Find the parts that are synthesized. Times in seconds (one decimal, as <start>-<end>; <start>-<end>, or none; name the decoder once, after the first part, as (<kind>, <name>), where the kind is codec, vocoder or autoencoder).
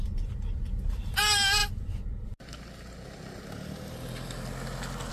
none